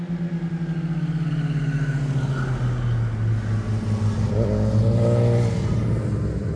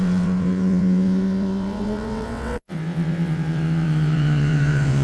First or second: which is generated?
second